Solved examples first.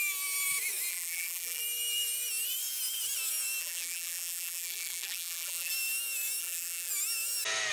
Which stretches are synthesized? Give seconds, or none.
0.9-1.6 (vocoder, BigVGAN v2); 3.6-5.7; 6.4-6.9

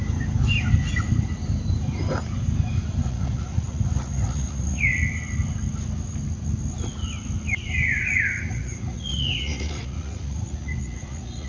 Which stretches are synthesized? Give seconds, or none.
3.0-4.9 (vocoder, Vocos); 8.5-11.5